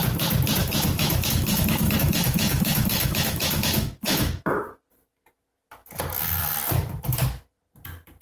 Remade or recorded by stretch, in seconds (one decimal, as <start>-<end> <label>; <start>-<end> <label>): 0.0-0.6 recorded; 0.6-4.6 remade; 4.6-8.2 recorded